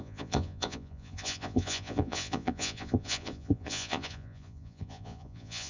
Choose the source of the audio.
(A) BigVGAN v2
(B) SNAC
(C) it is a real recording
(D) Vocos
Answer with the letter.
D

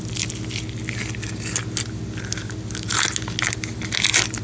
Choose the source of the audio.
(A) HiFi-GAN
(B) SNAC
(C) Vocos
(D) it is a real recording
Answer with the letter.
D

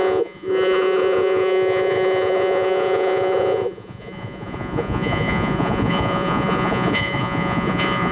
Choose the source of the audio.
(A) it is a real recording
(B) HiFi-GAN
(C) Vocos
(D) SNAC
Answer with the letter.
C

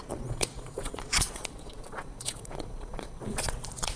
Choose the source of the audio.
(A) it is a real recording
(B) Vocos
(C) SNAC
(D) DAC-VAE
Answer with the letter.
B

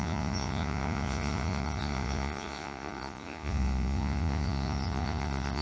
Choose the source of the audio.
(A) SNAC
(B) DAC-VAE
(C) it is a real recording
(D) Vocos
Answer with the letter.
D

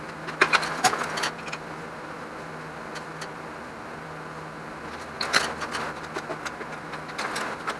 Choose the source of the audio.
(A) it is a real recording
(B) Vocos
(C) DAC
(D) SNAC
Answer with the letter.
A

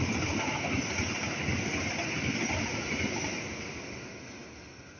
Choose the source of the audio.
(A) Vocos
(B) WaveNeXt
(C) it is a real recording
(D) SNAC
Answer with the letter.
C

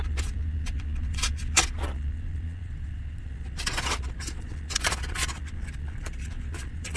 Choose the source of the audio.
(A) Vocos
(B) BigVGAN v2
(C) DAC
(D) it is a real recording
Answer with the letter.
A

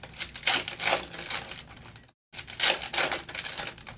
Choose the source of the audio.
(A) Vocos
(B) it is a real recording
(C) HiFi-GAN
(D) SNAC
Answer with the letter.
B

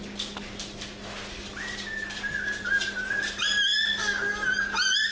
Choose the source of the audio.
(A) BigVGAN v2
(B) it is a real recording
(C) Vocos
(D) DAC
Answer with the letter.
B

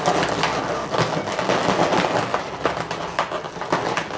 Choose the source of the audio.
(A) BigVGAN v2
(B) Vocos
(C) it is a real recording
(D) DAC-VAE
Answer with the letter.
C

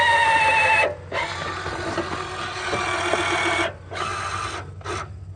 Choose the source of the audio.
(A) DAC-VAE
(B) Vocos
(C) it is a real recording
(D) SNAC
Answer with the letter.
C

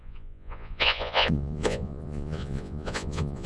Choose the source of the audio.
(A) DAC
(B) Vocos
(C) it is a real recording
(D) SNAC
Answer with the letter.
B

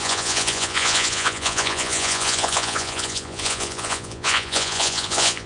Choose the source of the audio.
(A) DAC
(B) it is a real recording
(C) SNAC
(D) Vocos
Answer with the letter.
D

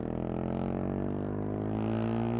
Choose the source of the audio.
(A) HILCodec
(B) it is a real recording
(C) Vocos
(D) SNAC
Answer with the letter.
B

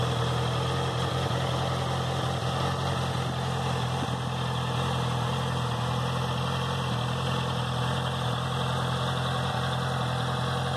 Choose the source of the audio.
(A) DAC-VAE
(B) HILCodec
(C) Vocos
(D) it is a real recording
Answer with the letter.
D